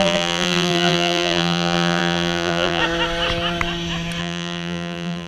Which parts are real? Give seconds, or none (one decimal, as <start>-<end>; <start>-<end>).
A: 2.8-4.2